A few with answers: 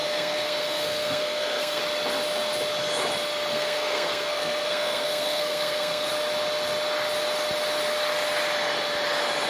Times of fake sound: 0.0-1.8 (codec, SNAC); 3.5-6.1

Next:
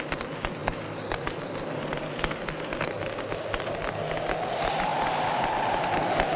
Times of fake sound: none

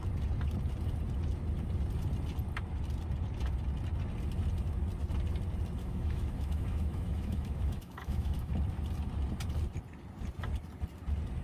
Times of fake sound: 5.8-8.5 (autoencoder, DAC-VAE)

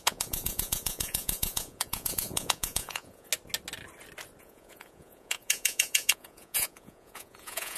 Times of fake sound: 0.0-3.3 (vocoder, Vocos); 4.4-7.8

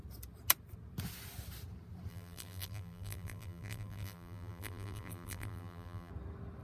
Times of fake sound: 2.1-6.1 (vocoder, BigVGAN v2)